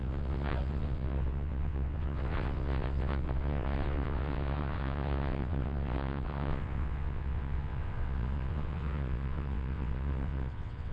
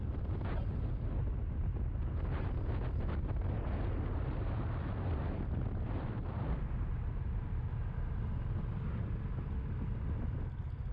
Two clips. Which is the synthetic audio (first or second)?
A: first